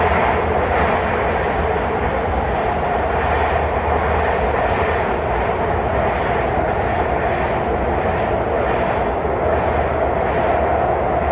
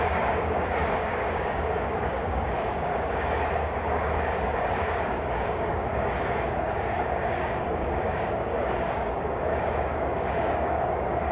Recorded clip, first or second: first